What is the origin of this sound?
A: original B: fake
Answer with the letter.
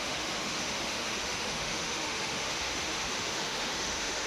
B